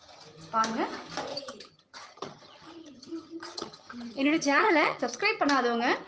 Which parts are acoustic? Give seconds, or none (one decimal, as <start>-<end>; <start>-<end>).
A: 0.0-1.3; 5.0-6.1